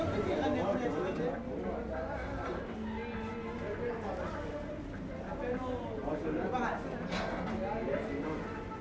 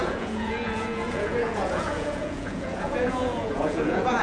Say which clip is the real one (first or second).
first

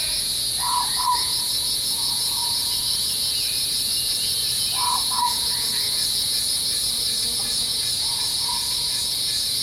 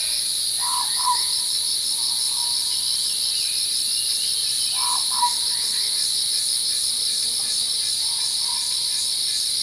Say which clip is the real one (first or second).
second